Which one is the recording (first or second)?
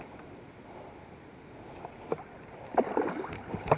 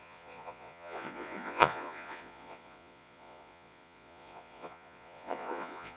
first